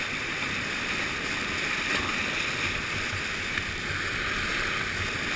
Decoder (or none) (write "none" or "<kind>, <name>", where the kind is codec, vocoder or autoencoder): none